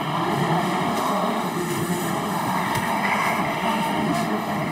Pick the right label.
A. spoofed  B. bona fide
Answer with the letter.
A